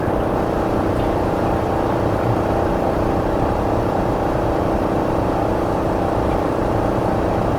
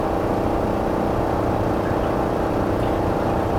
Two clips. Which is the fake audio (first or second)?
first